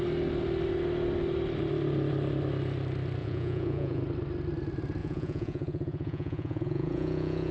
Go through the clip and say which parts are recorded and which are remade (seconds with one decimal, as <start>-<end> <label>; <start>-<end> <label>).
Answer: 0.0-3.2 recorded; 3.2-4.0 remade; 4.0-5.0 recorded; 5.0-7.5 remade